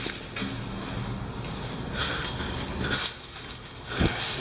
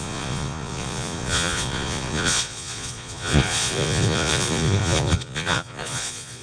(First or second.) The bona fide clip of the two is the first